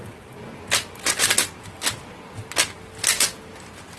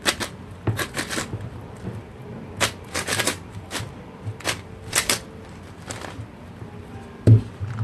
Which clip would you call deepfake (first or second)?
second